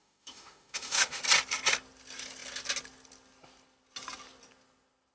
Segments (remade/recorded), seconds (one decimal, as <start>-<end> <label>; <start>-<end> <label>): 0.0-1.2 remade; 1.2-5.1 recorded